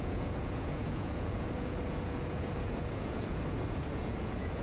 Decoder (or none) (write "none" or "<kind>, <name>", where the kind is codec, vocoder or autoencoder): vocoder, Vocos